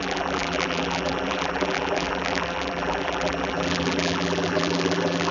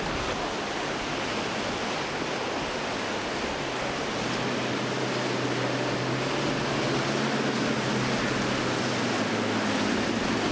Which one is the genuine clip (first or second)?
second